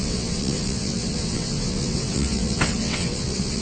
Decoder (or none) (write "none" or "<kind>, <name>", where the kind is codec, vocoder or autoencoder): vocoder, WaveNeXt